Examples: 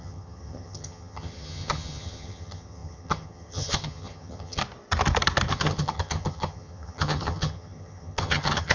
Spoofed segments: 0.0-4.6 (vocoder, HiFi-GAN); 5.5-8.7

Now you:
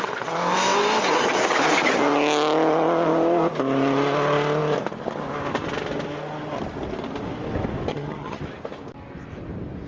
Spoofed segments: 7.9-8.4 (vocoder, HiFi-GAN)